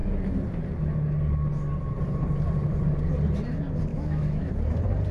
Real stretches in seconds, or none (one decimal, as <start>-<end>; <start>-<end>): 0.0-3.9; 4.5-5.1